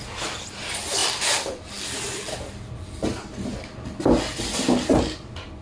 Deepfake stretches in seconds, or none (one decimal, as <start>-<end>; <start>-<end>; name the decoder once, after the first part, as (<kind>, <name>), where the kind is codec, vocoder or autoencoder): none